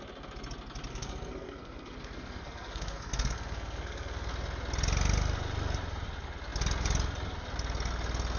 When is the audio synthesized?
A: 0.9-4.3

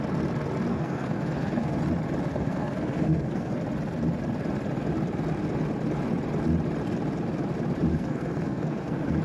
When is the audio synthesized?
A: 0.7-1.8; 2.3-3.6; 7.9-9.2

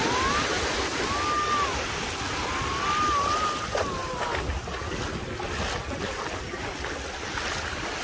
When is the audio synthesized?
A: none

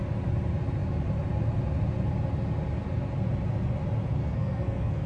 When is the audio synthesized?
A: 4.2-5.1

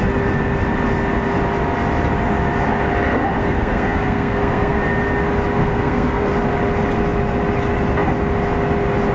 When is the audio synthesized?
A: 3.4-4.8; 5.6-6.3

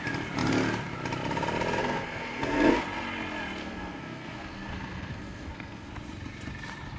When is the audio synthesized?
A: 1.8-2.7; 3.6-5.9

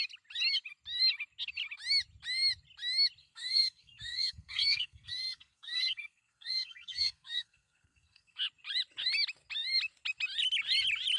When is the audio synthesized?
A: 3.2-8.4

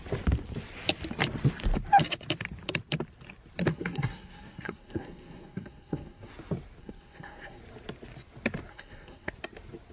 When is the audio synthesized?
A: 3.7-6.3; 6.8-7.6; 8.7-9.3